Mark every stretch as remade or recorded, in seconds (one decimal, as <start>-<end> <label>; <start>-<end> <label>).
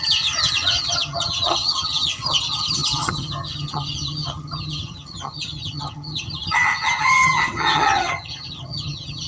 0.0-9.3 remade